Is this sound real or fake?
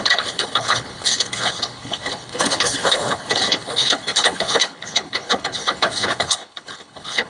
fake